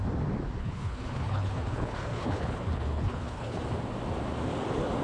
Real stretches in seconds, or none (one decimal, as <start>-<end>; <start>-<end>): 0.0-0.6; 3.6-5.0